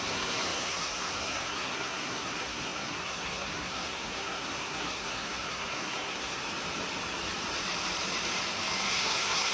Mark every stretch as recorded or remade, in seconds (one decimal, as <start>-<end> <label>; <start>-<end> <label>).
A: 0.0-6.4 remade; 6.4-8.9 recorded; 8.9-9.5 remade